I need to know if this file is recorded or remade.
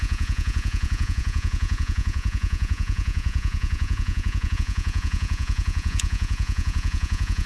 remade